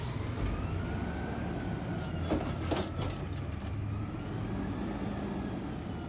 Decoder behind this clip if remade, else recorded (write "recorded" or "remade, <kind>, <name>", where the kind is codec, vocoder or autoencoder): recorded